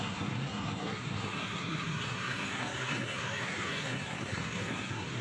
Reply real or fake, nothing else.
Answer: fake